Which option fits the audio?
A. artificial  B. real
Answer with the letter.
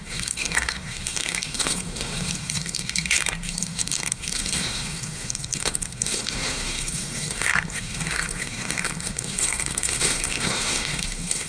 A